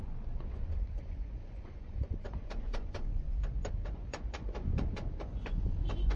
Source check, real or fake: fake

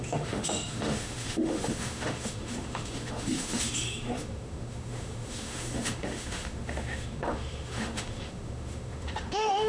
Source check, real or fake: fake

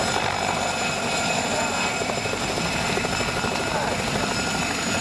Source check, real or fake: real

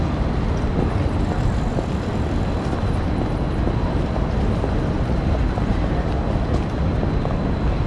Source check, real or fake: real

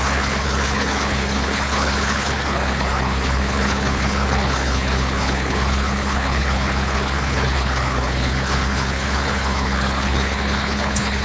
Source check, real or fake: fake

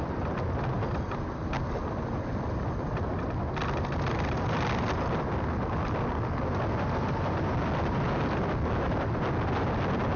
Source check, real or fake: real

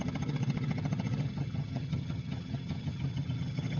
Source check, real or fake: fake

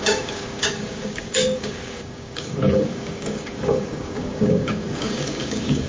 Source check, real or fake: fake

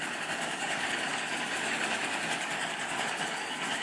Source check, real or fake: fake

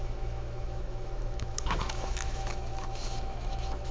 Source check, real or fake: fake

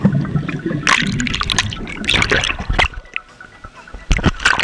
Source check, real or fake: real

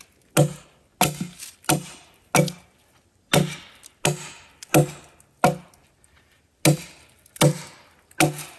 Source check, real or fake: real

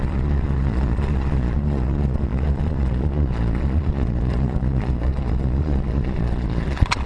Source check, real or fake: fake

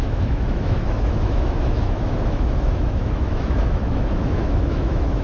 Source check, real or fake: fake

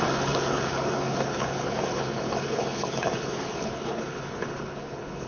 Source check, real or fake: fake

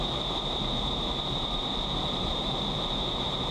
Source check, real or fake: fake